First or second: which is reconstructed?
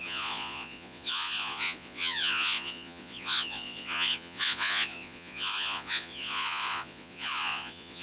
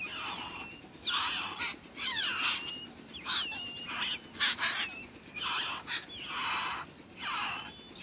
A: first